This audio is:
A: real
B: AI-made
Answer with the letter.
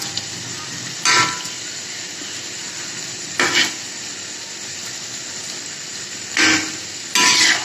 A